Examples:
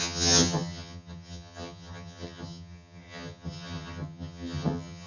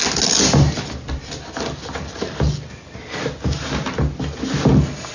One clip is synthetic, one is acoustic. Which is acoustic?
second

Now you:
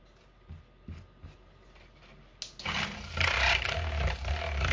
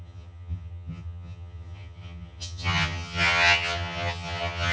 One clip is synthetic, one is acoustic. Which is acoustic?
first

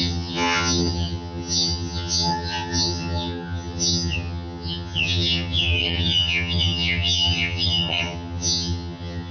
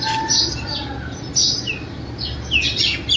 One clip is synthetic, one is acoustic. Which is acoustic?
second